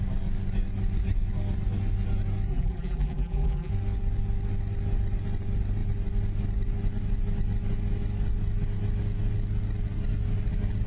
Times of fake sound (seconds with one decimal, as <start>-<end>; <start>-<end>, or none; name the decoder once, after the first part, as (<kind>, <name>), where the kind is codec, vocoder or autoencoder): 2.5-3.7 (vocoder, BigVGAN v2)